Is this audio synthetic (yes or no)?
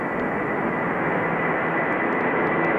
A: no